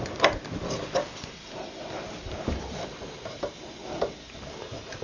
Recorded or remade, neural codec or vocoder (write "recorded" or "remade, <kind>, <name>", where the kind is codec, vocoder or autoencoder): recorded